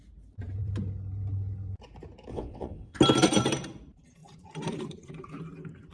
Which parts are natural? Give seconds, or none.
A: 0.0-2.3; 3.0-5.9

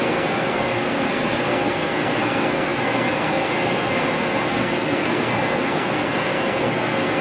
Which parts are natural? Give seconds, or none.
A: none